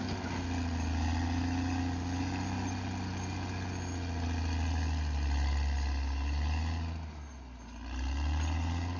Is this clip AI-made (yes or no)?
no